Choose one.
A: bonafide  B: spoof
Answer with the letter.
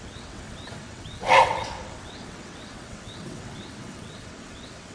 B